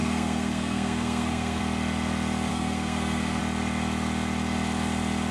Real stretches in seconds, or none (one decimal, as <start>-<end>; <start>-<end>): 1.6-2.5; 3.4-5.3